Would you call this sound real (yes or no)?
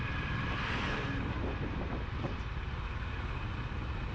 yes